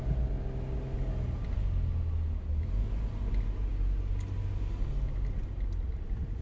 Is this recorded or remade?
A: recorded